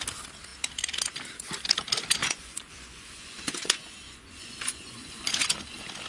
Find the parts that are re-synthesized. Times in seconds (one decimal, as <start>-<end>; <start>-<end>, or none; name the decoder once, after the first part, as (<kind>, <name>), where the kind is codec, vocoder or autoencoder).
2.2-5.6 (vocoder, Vocos)